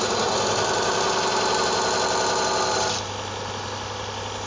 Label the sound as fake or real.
real